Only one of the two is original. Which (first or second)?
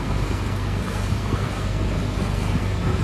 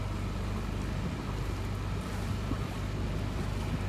second